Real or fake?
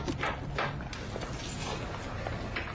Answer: real